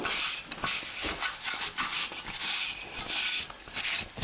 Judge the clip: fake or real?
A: real